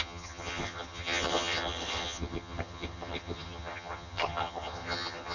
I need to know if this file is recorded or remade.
remade